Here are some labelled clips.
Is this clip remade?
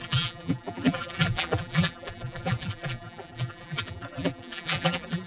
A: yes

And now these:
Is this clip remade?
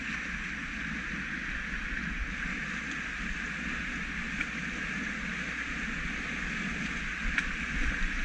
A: no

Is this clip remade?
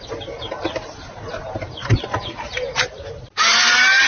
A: yes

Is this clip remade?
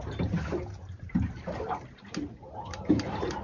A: no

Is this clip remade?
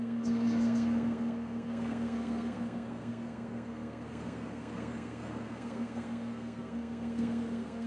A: yes